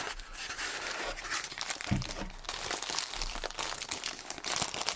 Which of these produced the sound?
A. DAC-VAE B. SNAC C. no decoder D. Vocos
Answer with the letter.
C